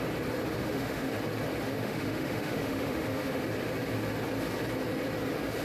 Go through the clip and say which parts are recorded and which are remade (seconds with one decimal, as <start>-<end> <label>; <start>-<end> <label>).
0.0-0.5 recorded; 0.5-1.1 remade; 1.1-1.7 recorded; 1.7-3.4 remade; 3.4-5.6 recorded